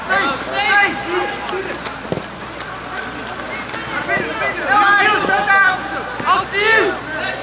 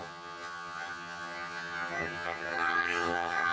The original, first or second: first